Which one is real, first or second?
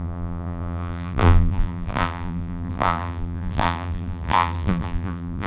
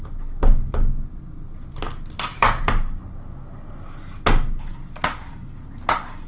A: second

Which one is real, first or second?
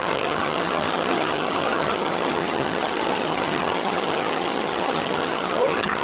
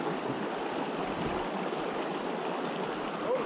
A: second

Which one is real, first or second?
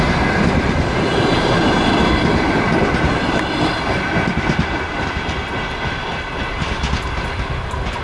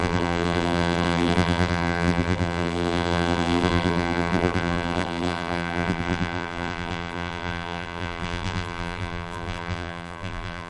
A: first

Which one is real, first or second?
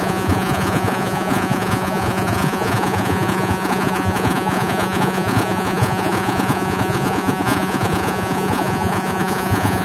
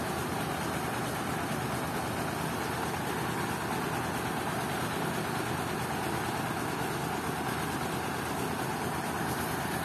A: second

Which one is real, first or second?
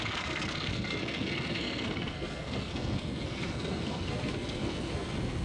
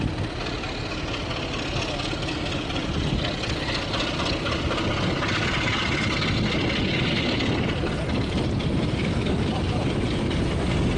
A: second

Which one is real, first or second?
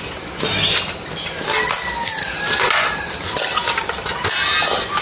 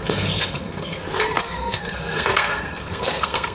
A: first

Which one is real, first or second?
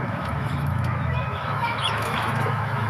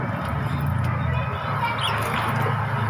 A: second